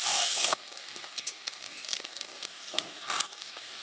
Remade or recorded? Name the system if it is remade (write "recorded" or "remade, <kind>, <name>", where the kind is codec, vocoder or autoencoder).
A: remade, codec, DAC